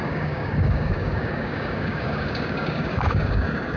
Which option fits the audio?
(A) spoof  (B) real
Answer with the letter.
A